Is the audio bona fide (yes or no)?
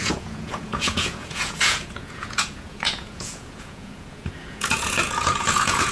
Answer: no